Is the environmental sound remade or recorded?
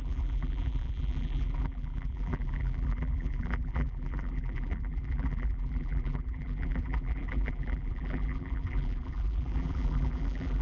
remade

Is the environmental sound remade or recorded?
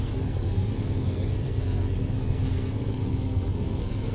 remade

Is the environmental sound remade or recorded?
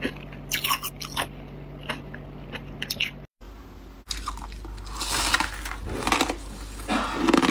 recorded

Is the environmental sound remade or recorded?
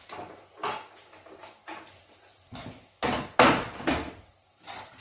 recorded